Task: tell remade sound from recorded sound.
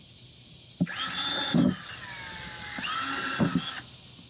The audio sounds recorded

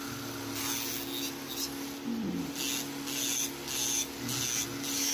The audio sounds recorded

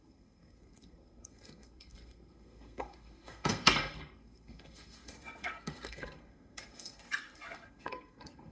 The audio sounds remade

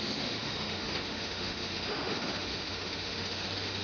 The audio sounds remade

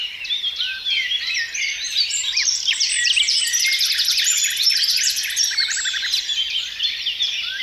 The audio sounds recorded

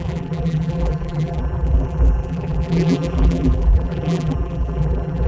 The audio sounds remade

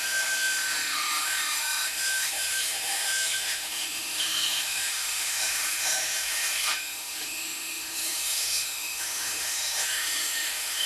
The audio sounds remade